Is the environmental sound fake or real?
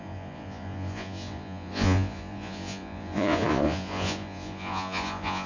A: fake